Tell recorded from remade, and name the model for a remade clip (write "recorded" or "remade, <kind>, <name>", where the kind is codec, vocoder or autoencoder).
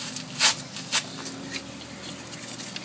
recorded